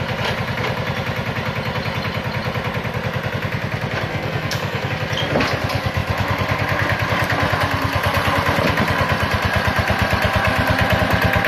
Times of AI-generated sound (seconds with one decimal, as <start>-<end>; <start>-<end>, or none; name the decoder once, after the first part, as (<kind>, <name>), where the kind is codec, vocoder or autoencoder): 4.1-4.9 (codec, SNAC)